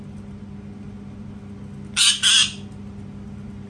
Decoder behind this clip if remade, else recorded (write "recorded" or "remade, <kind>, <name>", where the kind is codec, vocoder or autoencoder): recorded